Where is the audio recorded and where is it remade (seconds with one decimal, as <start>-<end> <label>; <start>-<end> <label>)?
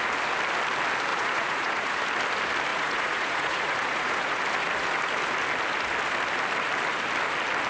0.0-1.1 recorded; 1.1-2.0 remade; 2.0-2.7 recorded; 2.7-4.4 remade; 4.4-7.7 recorded